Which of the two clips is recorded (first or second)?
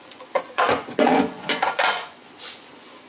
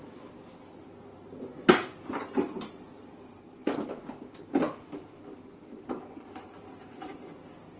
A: second